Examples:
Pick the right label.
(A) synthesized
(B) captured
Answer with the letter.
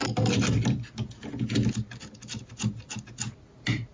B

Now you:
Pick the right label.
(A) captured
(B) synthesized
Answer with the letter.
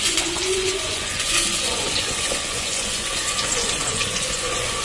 B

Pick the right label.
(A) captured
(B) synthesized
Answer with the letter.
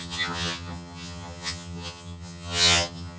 B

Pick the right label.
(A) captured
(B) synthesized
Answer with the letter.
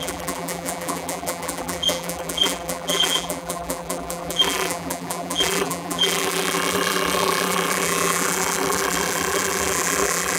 B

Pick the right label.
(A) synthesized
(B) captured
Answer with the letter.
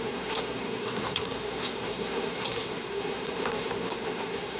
A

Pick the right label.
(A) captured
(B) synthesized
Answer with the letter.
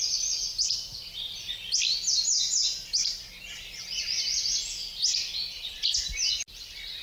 A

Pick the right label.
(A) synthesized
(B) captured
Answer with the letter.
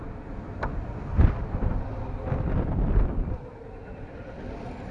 A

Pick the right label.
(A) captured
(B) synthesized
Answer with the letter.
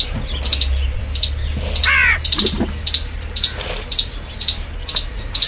A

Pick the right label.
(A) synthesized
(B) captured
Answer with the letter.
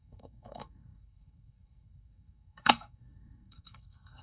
A